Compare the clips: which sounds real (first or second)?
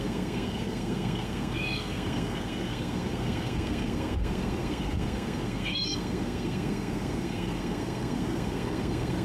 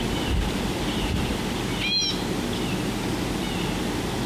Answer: second